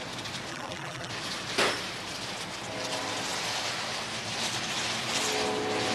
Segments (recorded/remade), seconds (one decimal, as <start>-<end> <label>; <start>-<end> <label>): 0.0-0.5 recorded; 0.5-1.1 remade; 1.1-5.9 recorded